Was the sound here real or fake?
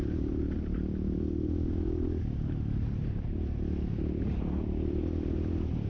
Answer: fake